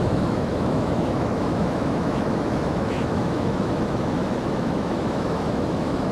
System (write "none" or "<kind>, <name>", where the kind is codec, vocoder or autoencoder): autoencoder, DAC-VAE